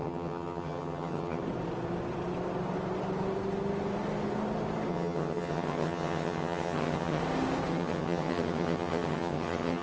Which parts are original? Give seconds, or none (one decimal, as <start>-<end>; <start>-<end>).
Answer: 1.4-4.9; 7.2-7.7